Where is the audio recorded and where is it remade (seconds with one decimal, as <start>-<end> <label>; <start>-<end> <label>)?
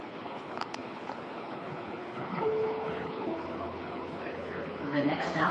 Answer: 0.0-5.5 remade